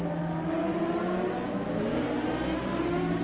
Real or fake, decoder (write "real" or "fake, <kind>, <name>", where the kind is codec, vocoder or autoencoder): real